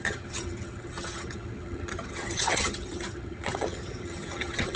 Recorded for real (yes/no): no